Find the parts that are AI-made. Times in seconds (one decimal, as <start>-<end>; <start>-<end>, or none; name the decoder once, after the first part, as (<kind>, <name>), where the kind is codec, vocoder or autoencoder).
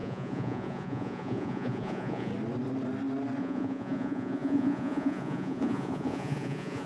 0.0-2.3 (vocoder, Vocos); 3.4-6.9